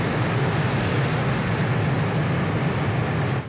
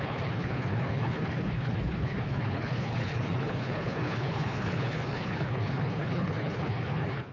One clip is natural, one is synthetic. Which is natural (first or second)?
first